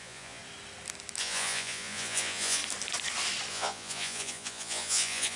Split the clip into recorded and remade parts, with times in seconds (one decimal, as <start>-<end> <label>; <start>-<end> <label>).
0.0-0.4 remade; 0.4-1.2 recorded; 1.2-2.6 remade; 2.6-3.5 recorded; 3.5-5.4 remade